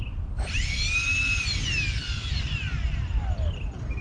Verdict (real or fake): fake